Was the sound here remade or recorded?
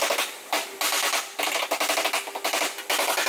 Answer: recorded